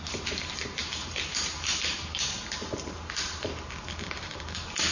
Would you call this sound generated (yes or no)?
yes